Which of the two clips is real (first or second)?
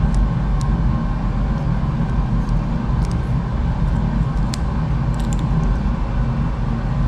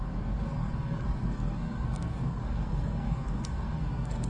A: first